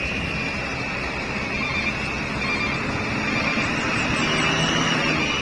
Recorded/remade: recorded